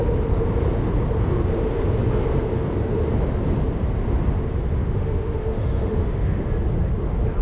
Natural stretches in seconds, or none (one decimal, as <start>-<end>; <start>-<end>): 0.0-4.8; 6.5-7.4